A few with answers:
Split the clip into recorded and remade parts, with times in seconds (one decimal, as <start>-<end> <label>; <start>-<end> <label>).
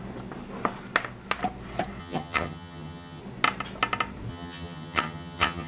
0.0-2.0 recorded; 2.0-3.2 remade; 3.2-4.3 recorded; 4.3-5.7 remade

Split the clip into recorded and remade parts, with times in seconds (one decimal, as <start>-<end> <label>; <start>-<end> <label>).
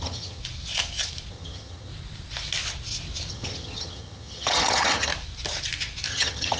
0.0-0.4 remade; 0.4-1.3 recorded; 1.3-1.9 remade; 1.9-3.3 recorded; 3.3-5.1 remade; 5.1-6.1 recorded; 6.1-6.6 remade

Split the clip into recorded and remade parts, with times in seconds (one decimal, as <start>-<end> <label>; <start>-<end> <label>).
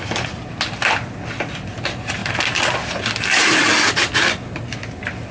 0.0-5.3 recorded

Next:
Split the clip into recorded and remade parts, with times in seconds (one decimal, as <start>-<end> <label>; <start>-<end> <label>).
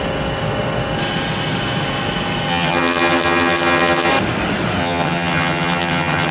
0.0-2.5 recorded; 2.5-4.1 remade; 4.1-4.8 recorded; 4.8-6.3 remade